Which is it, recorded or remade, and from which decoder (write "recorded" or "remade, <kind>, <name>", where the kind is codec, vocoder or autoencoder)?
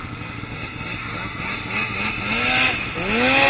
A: recorded